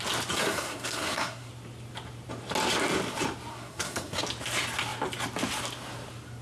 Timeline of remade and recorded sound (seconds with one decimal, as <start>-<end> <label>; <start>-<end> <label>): 0.0-0.4 recorded; 0.4-1.5 remade; 1.5-3.5 recorded; 3.5-4.2 remade; 4.2-6.4 recorded